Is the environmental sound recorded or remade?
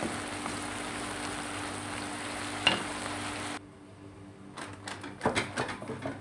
recorded